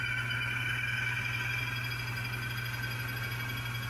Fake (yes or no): no